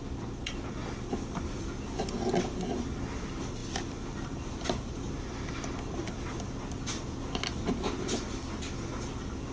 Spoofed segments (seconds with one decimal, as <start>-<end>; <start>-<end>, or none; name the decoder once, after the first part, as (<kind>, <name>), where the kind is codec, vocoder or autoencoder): 3.6-7.2 (vocoder, BigVGAN v2)